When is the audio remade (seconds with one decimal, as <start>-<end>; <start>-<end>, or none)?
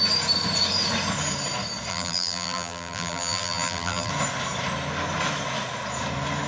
1.9-4.1